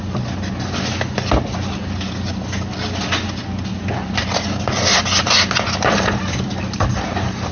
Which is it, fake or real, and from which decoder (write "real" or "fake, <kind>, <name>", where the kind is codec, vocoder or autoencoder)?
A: real